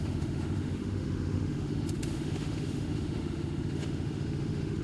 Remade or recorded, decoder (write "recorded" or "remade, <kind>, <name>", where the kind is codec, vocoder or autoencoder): remade, autoencoder, DAC-VAE